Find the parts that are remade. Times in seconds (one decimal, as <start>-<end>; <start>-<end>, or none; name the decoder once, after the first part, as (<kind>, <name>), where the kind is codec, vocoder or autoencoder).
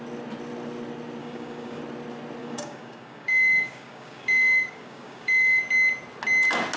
1.2-1.8 (codec, DAC); 2.4-5.6